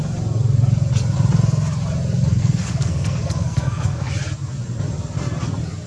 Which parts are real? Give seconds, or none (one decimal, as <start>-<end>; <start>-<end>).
0.0-2.4; 4.1-5.9